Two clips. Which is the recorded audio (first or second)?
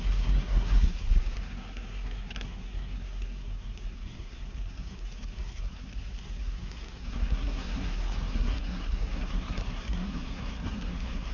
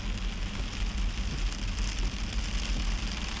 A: second